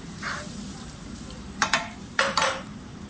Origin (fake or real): fake